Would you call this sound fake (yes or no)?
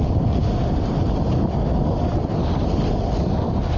no